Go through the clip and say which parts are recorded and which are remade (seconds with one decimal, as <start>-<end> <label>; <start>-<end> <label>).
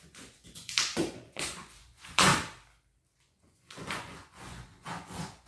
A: 0.0-2.3 remade; 2.3-3.2 recorded; 3.2-5.5 remade